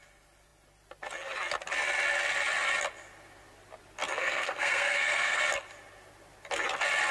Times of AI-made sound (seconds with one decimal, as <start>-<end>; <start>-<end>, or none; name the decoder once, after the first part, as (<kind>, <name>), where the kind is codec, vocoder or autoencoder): 4.2-5.4 (codec, SNAC)